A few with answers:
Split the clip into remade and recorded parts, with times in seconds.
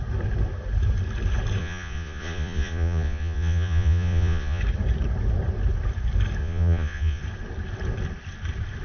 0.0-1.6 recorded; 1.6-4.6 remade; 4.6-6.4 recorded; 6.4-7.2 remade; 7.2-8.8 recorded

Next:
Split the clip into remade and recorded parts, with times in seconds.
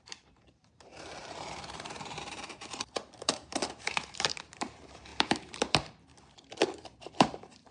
0.0-6.1 remade; 6.1-7.0 recorded; 7.0-7.7 remade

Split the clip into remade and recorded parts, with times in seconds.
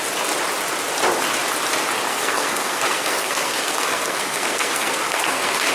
0.0-2.1 recorded; 2.1-5.7 remade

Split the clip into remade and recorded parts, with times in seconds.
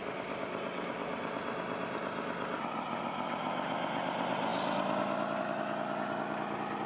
0.0-6.9 recorded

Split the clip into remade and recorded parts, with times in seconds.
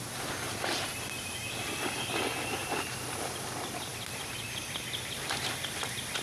0.0-0.9 remade; 0.9-1.5 recorded; 1.5-6.2 remade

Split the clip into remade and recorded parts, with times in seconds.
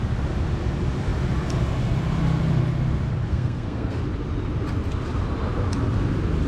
0.0-3.3 recorded; 3.3-4.0 remade; 4.0-6.5 recorded